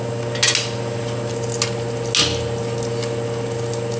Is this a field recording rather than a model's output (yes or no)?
yes